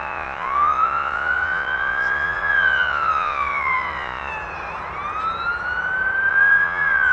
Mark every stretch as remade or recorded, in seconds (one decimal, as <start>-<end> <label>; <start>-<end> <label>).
0.0-4.3 remade; 4.3-6.3 recorded; 6.3-7.1 remade